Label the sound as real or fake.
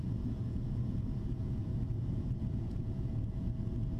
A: fake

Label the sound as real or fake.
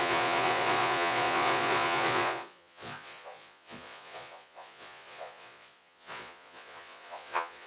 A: fake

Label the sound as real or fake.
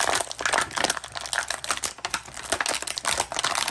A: real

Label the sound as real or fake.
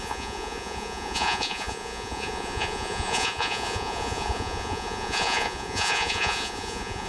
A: fake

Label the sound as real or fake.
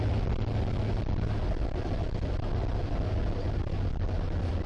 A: real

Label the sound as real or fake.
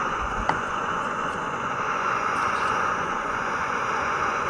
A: fake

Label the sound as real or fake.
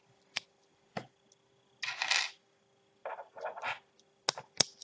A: real